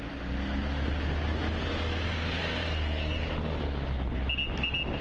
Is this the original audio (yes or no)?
yes